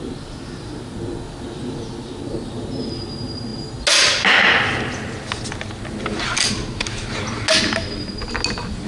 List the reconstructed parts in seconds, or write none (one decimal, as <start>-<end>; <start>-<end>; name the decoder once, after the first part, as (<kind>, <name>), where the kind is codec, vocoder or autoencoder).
none